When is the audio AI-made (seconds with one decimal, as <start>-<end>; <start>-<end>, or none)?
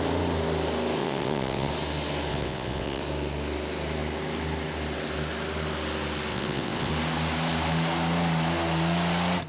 1.0-1.7; 2.3-3.0; 6.3-6.9